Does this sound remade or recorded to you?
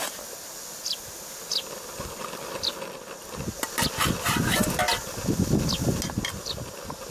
recorded